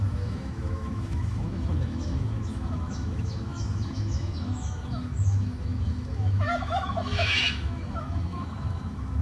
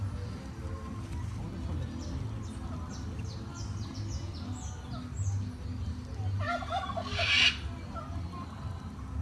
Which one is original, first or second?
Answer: second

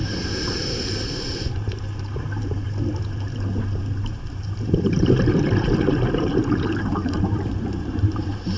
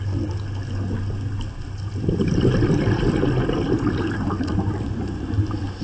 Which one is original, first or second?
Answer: second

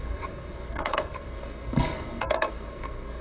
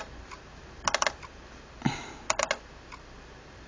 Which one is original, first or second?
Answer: second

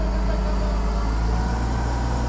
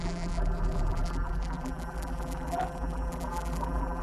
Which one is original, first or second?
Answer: first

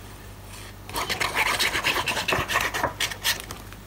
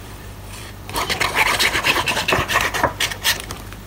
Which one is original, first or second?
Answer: first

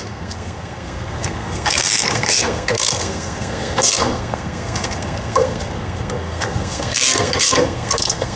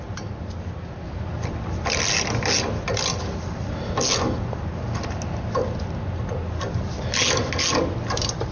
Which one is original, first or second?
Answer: second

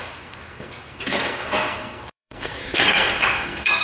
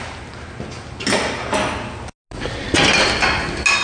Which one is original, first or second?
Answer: second